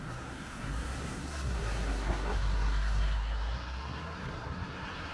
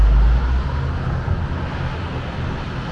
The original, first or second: second